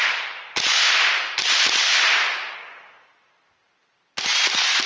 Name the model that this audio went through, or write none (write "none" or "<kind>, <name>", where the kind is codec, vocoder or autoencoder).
none